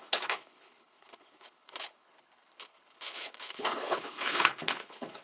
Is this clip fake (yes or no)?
yes